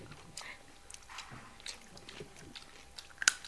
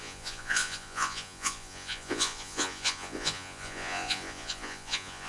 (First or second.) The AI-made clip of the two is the second